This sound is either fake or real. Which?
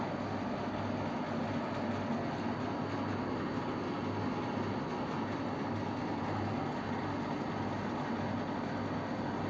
real